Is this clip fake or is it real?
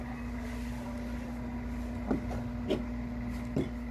real